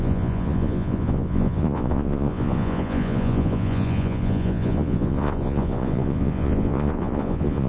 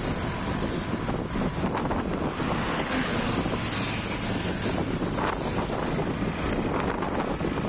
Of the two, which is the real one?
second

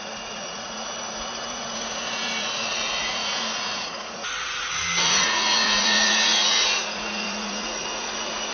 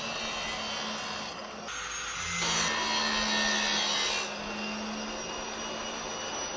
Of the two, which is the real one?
second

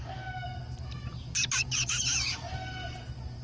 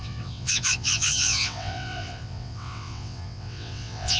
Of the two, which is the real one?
first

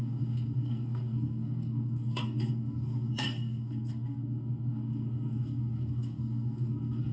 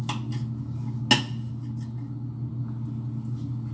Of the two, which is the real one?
second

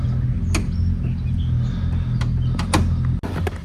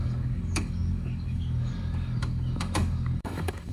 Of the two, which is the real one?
first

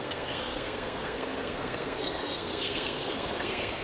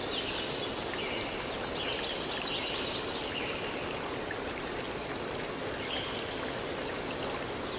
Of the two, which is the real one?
second